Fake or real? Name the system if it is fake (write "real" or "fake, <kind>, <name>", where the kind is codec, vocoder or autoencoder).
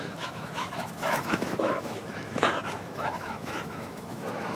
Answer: fake, autoencoder, DAC-VAE